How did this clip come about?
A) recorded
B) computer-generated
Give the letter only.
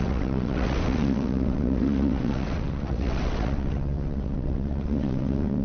B